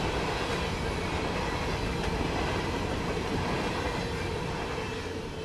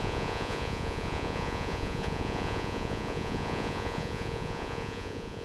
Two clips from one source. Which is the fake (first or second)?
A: second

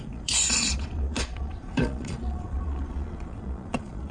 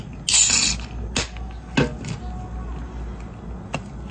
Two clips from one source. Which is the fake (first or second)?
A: first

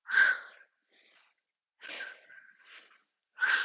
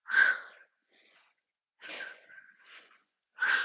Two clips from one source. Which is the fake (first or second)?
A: second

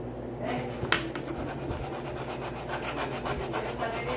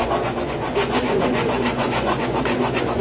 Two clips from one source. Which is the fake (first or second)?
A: second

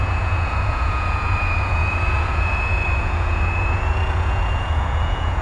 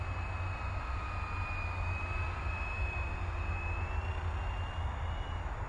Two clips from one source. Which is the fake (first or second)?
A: first